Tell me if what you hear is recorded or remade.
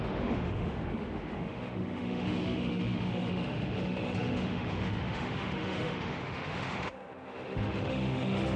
remade